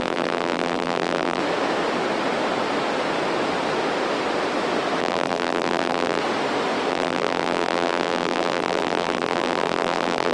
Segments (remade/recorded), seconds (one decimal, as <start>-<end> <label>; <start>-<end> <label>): 0.0-1.4 remade; 1.4-5.0 recorded; 5.0-6.2 remade; 6.2-6.9 recorded; 6.9-10.3 remade